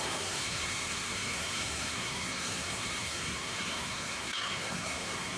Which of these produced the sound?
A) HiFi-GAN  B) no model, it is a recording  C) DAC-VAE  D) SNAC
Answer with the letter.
D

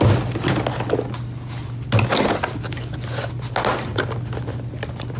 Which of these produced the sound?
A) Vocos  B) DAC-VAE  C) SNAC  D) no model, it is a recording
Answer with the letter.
D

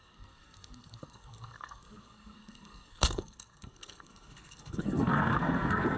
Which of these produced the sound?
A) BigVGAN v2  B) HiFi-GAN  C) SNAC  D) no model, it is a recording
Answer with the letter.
C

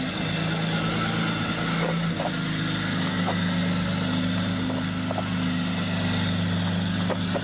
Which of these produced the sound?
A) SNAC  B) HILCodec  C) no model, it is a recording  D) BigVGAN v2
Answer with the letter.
C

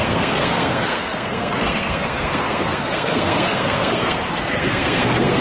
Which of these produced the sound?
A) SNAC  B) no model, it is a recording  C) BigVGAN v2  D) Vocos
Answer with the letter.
A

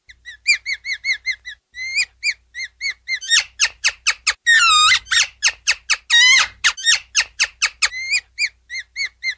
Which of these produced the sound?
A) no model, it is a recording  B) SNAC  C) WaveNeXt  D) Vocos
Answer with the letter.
A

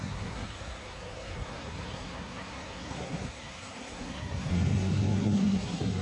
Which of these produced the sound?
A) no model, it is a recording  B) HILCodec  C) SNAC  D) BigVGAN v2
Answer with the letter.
C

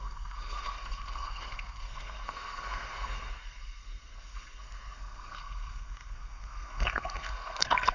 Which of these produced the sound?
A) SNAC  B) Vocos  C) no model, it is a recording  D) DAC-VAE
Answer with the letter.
A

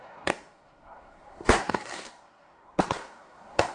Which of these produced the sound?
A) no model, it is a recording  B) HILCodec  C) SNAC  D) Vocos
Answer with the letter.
C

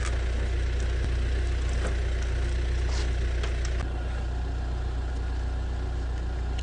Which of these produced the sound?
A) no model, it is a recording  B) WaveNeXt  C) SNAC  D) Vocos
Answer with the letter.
A